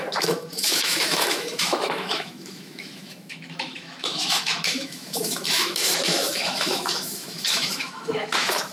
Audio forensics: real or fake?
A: fake